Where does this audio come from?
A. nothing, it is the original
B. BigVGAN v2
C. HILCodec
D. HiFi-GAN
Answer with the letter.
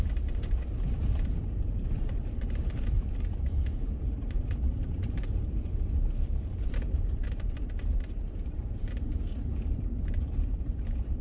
B